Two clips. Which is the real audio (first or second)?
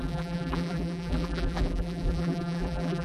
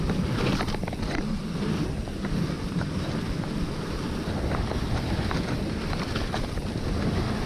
second